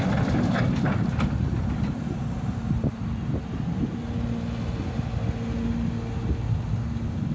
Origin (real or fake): real